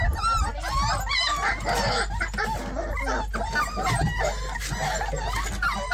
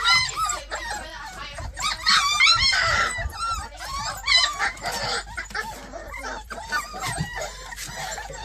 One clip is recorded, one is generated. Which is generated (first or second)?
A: second